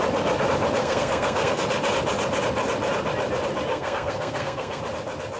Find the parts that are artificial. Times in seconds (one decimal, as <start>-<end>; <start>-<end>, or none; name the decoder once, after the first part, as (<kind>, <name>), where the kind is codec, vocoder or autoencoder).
0.8-1.6 (codec, SNAC); 3.7-4.8

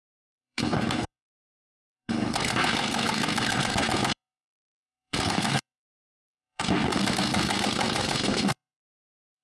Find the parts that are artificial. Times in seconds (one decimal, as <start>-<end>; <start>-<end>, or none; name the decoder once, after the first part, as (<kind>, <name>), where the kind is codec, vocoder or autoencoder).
0.0-9.4 (codec, SNAC)